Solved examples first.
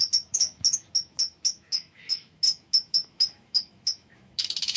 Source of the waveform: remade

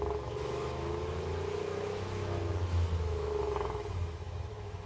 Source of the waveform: remade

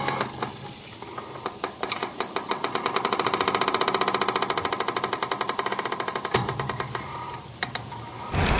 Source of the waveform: recorded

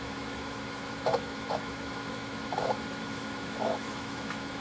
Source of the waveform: remade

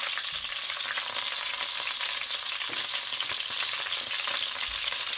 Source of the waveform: recorded